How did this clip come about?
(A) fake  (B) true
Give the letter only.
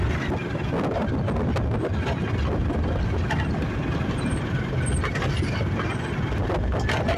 B